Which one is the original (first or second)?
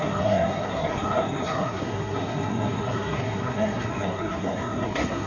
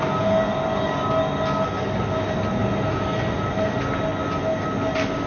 second